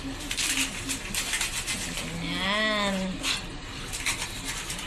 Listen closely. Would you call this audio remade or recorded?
recorded